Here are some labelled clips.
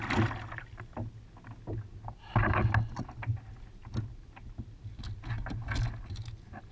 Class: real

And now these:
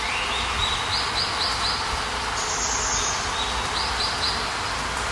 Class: real